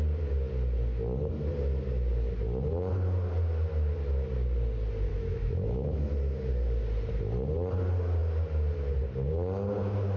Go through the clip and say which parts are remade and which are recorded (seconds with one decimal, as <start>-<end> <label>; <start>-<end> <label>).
0.0-5.1 recorded; 5.1-6.5 remade; 6.5-10.2 recorded